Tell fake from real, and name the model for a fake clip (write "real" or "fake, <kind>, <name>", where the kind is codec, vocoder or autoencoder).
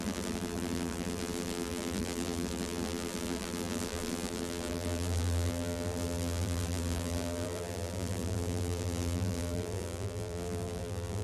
fake, vocoder, BigVGAN v2